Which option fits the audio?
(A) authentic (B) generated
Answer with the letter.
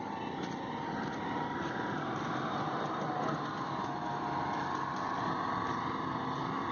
A